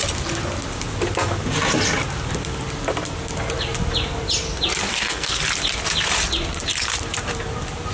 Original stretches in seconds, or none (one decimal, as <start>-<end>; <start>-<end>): 0.0-4.9; 5.4-7.9